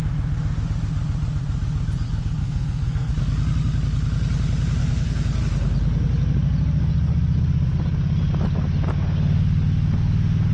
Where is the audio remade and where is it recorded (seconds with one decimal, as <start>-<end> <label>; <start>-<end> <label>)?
0.0-2.4 recorded; 2.4-3.1 remade; 3.1-4.8 recorded; 4.8-5.4 remade; 5.4-10.5 recorded